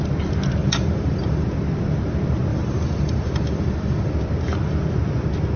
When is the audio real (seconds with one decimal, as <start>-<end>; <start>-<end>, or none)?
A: 0.0-0.6; 1.4-2.5; 4.1-5.6